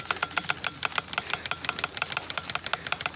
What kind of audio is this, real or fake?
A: real